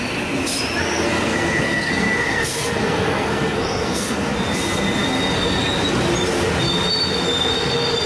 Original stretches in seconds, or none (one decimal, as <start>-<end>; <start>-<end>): 0.0-0.8; 4.3-8.1